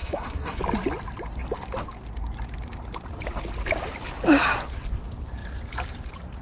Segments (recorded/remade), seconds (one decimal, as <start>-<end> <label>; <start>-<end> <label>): 0.0-0.6 remade; 0.6-6.4 recorded